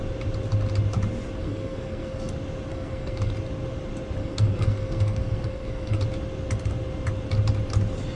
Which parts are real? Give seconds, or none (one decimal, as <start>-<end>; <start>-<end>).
0.0-1.4; 2.3-2.7; 3.3-4.2; 6.0-8.2

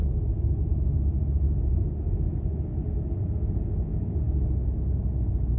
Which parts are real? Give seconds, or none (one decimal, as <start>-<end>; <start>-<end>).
0.0-5.6

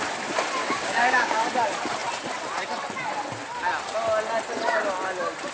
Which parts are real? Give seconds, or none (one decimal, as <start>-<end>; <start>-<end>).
0.0-0.6; 1.4-5.5